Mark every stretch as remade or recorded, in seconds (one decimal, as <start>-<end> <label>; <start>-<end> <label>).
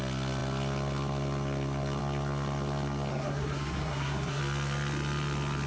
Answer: 0.0-3.1 recorded; 3.1-4.4 remade; 4.4-5.7 recorded